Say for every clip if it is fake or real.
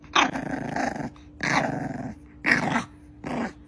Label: real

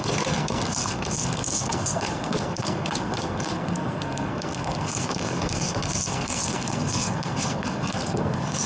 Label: fake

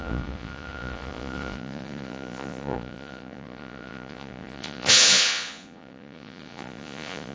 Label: fake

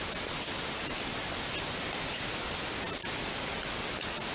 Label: real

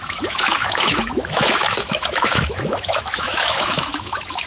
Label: fake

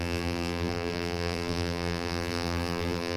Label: fake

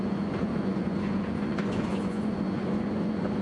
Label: fake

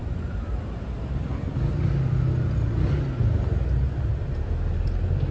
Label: real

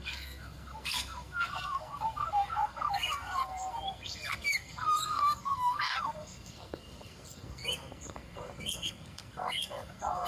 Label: fake